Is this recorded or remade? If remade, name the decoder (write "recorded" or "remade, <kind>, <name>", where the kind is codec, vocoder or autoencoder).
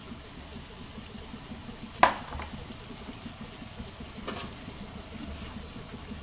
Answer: recorded